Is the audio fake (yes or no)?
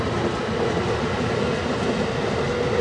no